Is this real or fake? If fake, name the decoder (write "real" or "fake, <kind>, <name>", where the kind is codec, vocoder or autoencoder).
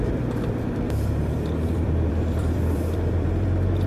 fake, vocoder, BigVGAN v2